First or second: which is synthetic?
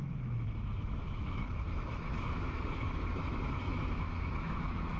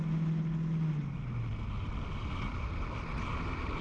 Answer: first